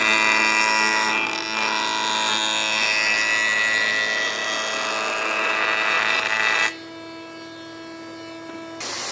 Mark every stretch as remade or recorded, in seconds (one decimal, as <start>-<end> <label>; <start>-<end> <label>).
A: 0.0-9.1 recorded

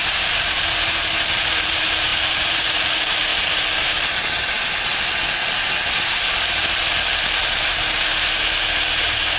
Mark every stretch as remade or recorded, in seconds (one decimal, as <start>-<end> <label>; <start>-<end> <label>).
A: 0.0-3.3 remade; 3.3-4.4 recorded; 4.4-4.9 remade; 4.9-7.5 recorded; 7.5-9.4 remade

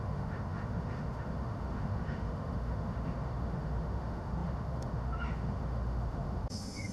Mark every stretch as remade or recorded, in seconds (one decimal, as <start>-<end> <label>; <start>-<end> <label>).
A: 0.0-6.9 remade

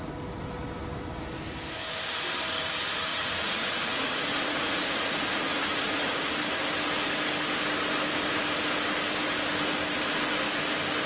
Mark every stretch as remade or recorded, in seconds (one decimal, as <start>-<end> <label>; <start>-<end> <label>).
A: 0.0-3.1 recorded; 3.1-6.3 remade; 6.3-11.1 recorded

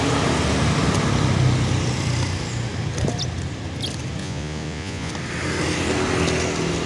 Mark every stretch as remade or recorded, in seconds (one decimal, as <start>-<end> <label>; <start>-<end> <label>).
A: 0.0-4.2 recorded; 4.2-5.1 remade; 5.1-6.9 recorded

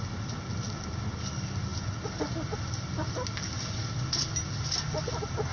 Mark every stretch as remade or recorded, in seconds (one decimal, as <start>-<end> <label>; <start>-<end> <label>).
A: 0.0-5.5 recorded

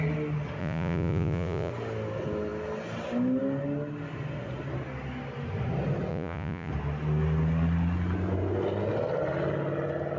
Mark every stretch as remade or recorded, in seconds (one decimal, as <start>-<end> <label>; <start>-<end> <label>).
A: 0.0-0.6 recorded; 0.6-1.7 remade; 1.7-6.1 recorded; 6.1-6.7 remade; 6.7-10.2 recorded